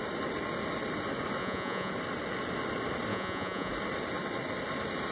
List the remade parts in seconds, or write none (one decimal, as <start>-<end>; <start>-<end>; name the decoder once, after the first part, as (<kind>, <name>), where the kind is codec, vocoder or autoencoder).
1.4-1.9 (vocoder, Vocos); 3.1-3.7